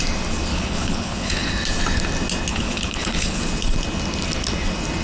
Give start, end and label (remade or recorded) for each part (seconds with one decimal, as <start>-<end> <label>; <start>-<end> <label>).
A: 0.0-0.5 recorded; 0.5-1.5 remade; 1.5-2.5 recorded; 2.5-3.4 remade; 3.4-5.0 recorded